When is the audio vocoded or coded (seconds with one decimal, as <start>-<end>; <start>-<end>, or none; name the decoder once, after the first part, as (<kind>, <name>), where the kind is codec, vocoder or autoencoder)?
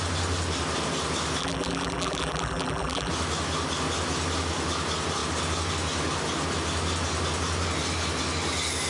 1.4-3.1 (vocoder, BigVGAN v2)